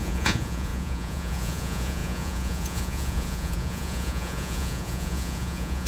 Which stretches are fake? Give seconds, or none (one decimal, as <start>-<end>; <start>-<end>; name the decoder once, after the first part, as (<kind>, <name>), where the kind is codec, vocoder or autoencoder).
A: 0.0-5.9 (vocoder, Vocos)